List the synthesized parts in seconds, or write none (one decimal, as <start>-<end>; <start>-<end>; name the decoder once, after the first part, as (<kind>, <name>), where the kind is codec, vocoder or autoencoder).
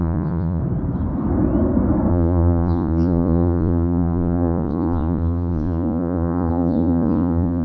0.0-0.6 (vocoder, Vocos); 2.1-7.6